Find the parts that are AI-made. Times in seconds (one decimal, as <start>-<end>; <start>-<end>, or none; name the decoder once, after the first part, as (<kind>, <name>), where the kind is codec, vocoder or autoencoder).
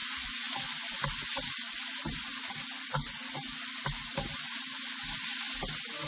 none